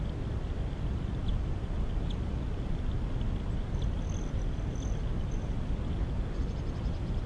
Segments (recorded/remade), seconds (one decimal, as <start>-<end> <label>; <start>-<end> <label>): 0.0-7.3 recorded